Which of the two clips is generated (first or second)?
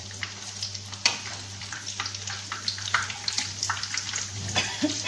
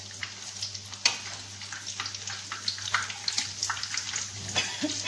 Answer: first